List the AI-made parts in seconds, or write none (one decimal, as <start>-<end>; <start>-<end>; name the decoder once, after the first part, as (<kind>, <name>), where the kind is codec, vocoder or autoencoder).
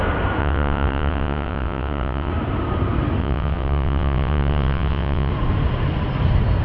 0.4-2.3 (vocoder, WaveNeXt); 3.2-5.3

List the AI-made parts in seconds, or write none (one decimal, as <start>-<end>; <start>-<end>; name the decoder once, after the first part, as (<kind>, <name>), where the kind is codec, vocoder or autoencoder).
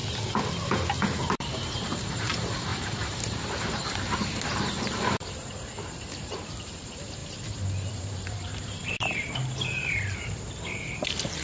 1.2-7.2 (vocoder, BigVGAN v2); 7.9-11.4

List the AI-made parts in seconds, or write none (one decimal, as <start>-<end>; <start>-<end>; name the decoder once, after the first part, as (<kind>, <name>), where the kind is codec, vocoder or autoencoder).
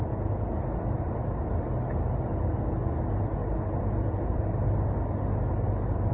3.4-4.4 (vocoder, BigVGAN v2)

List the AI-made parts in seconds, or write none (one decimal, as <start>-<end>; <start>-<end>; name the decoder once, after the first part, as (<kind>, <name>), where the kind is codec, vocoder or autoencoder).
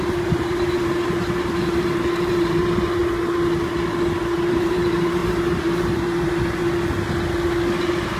0.0-3.0 (vocoder, BigVGAN v2); 4.2-6.6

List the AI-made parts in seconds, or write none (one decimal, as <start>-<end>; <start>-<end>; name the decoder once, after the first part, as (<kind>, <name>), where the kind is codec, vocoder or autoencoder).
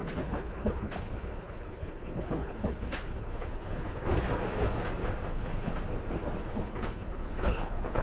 0.0-4.1 (codec, HILCodec); 5.3-5.7; 6.4-8.0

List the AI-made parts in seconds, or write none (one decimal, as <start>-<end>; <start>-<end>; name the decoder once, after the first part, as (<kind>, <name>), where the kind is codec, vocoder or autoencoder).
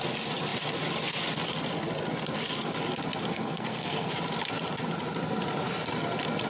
3.3-4.1 (codec, SNAC)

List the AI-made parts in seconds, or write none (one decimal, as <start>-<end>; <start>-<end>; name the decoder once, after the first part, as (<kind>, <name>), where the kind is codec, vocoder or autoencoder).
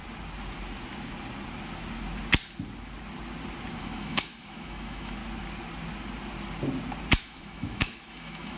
3.8-5.2 (autoencoder, DAC-VAE); 7.2-8.6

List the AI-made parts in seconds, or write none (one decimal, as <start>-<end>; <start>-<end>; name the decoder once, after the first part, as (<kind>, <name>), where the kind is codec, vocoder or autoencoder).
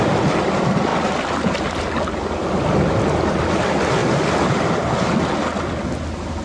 none